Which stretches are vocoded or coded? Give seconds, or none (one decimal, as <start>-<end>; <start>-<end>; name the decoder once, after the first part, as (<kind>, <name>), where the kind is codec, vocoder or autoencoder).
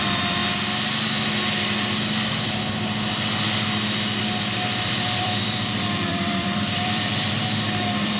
0.0-0.4 (vocoder, BigVGAN v2); 4.2-8.2